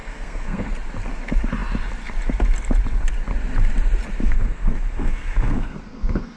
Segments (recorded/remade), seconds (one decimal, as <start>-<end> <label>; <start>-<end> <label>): 0.0-0.7 remade; 0.7-4.2 recorded; 4.2-6.4 remade